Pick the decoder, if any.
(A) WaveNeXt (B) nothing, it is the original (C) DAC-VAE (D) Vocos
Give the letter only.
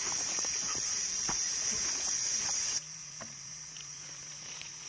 D